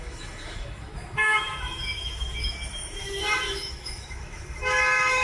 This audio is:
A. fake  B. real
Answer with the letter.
A